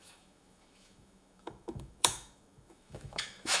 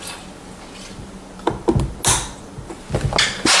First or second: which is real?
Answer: second